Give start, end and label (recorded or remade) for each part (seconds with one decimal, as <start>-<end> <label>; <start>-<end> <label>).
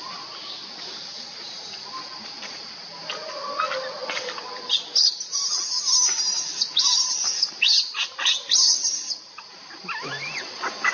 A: 0.0-1.1 recorded; 1.1-2.7 remade; 2.7-8.7 recorded; 8.7-10.1 remade; 10.1-10.9 recorded